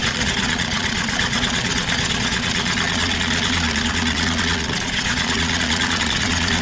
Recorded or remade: remade